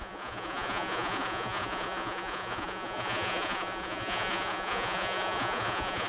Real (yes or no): no